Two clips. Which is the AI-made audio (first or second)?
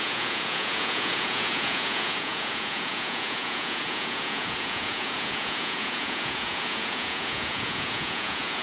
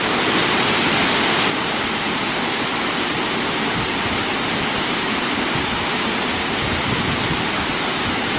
first